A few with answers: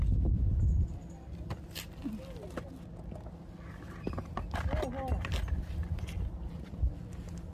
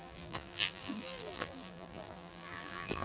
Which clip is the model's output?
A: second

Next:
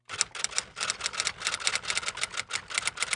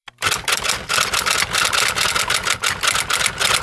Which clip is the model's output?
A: second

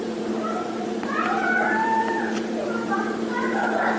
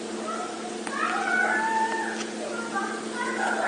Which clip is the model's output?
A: first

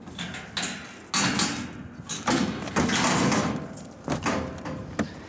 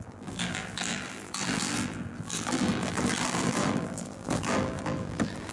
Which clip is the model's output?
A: second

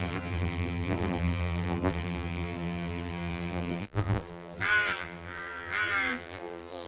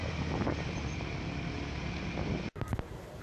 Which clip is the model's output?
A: first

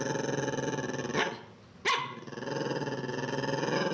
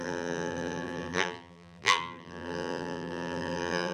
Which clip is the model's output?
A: second